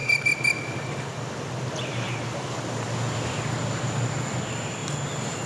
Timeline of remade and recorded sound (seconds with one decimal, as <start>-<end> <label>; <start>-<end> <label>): 0.0-5.5 recorded